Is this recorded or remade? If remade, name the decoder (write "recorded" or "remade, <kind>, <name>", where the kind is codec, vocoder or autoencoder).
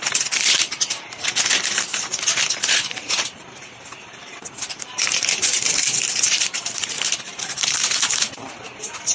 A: remade, vocoder, BigVGAN v2